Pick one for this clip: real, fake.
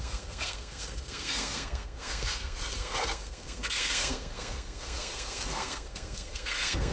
fake